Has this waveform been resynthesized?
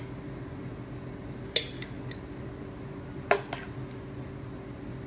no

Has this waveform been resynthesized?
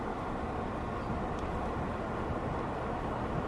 no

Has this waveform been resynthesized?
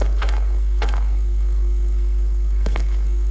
yes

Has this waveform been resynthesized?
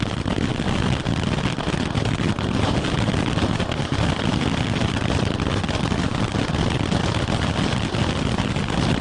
no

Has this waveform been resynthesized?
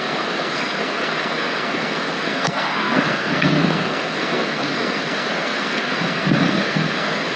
yes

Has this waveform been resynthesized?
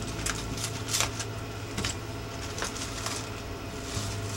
no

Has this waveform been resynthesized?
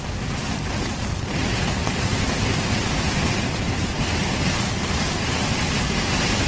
no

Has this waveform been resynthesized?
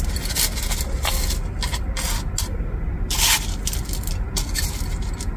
no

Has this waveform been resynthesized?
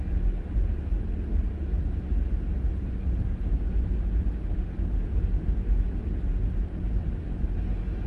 no